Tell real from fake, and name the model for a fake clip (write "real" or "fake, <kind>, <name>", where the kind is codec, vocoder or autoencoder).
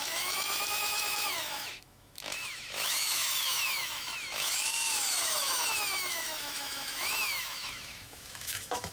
fake, autoencoder, DAC-VAE